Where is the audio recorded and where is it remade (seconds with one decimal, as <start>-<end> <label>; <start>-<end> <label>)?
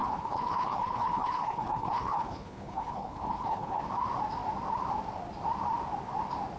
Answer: 0.0-3.8 remade; 3.8-6.6 recorded